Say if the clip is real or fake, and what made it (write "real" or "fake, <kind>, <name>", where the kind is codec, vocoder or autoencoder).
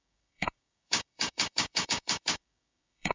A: fake, codec, DAC